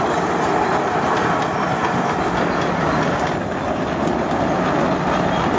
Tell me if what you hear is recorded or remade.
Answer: recorded